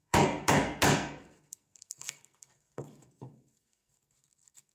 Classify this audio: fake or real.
fake